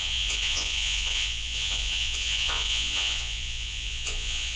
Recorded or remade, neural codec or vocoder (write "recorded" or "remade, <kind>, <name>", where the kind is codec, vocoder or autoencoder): remade, vocoder, Vocos